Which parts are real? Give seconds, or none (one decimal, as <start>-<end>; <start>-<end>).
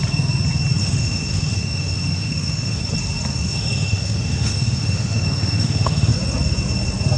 0.0-0.8; 2.8-3.3; 6.1-7.2